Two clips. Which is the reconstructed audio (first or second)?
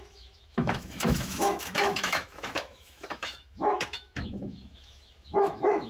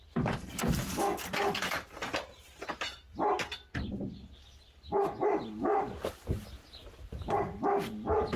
first